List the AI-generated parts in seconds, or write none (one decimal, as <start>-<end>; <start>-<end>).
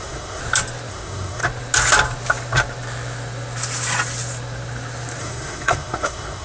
0.0-0.4; 0.9-1.4; 5.2-6.4